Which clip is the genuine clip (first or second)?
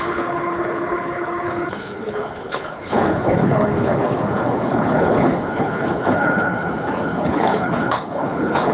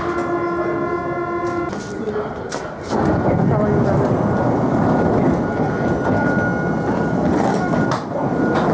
second